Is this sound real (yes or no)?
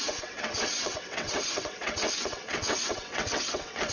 no